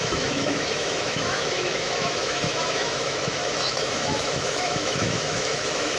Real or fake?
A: fake